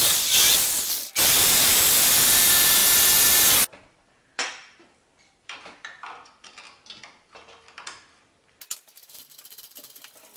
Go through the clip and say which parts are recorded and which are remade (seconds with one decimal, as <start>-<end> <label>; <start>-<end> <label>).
0.0-2.8 remade; 2.8-3.6 recorded; 3.6-10.4 remade

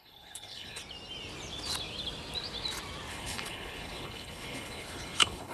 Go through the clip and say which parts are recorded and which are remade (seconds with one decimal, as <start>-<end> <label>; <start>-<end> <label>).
0.0-0.8 remade; 0.8-3.1 recorded; 3.1-5.5 remade

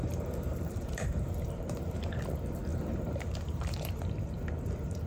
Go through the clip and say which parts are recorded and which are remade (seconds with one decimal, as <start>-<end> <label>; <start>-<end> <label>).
0.0-0.5 recorded; 0.5-1.8 remade; 1.8-2.7 recorded; 2.7-5.1 remade

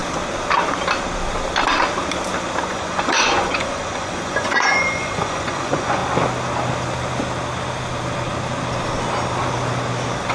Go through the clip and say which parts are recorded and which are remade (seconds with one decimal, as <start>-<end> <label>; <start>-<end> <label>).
0.0-2.7 recorded; 2.7-6.0 remade; 6.0-10.3 recorded

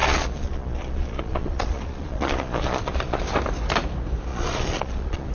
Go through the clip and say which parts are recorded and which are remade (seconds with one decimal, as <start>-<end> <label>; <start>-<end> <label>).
0.0-3.2 remade; 3.2-4.3 recorded; 4.3-5.3 remade

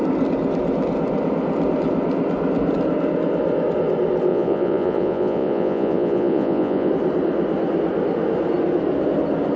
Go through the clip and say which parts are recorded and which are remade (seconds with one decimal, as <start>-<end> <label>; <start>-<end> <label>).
0.0-4.3 recorded; 4.3-6.9 remade; 6.9-9.6 recorded

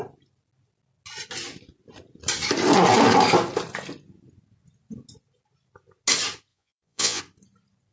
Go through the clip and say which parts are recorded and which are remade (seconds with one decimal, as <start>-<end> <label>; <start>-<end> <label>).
0.0-6.5 recorded; 6.5-7.2 remade; 7.2-7.9 recorded